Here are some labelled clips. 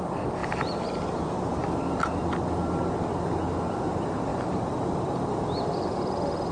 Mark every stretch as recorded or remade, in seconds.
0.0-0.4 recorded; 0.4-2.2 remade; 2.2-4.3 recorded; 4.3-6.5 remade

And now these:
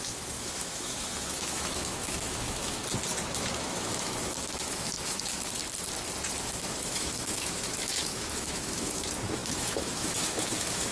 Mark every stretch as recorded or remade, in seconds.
0.0-2.8 remade; 2.8-3.3 recorded; 3.3-5.6 remade; 5.6-6.4 recorded; 6.4-10.9 remade